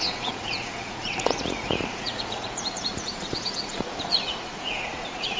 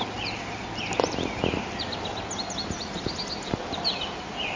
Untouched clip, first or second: second